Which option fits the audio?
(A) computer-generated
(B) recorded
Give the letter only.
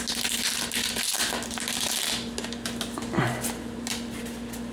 B